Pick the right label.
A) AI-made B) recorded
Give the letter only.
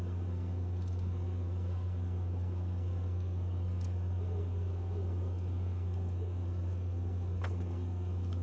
A